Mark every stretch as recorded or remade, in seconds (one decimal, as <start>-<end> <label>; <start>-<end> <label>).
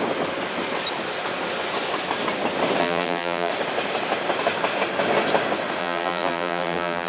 0.0-2.8 recorded; 2.8-3.5 remade; 3.5-5.8 recorded; 5.8-7.1 remade